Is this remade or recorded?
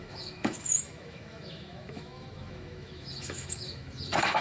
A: remade